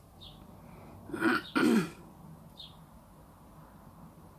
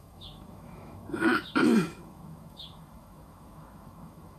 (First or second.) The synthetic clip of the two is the second